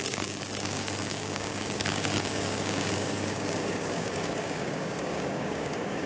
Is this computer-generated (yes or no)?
yes